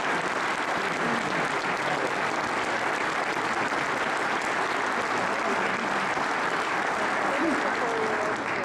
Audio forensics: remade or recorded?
recorded